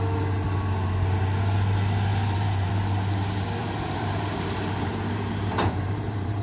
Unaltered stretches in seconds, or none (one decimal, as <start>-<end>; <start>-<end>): 0.0-2.1; 2.7-3.6